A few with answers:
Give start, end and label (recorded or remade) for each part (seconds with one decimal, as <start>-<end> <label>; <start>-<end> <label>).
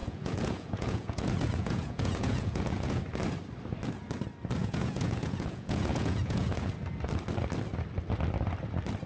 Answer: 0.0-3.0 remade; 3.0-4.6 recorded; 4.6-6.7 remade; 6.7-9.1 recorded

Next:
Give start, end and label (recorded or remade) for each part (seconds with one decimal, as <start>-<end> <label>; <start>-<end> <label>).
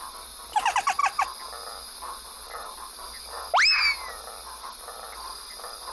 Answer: 0.0-5.9 recorded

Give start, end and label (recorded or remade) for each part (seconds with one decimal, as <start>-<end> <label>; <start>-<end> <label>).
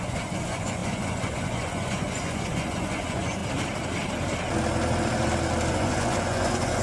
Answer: 0.0-3.4 remade; 3.4-5.7 recorded; 5.7-6.8 remade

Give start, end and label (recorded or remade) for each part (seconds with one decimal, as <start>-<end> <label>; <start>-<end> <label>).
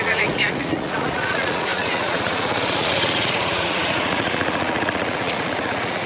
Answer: 0.0-6.1 remade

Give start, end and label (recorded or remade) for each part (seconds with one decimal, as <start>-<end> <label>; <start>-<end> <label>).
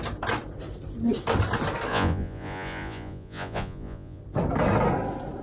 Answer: 0.0-1.9 recorded; 1.9-4.2 remade; 4.2-5.4 recorded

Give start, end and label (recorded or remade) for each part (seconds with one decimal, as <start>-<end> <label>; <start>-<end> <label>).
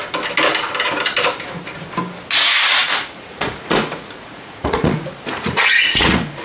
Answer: 0.0-2.8 recorded; 2.8-6.4 remade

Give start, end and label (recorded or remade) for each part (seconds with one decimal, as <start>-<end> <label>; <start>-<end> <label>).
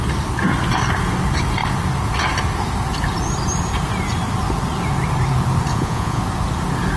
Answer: 0.0-5.7 recorded; 5.7-6.2 remade; 6.2-7.0 recorded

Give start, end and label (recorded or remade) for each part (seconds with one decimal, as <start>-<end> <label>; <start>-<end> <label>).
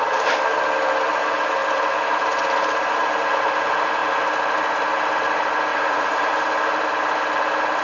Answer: 0.0-5.7 recorded; 5.7-6.3 remade; 6.3-7.8 recorded